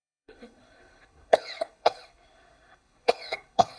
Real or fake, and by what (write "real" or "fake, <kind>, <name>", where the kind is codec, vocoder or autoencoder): fake, codec, HILCodec